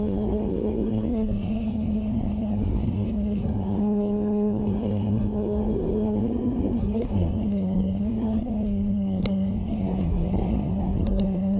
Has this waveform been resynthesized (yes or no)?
yes